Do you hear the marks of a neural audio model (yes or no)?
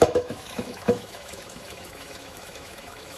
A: yes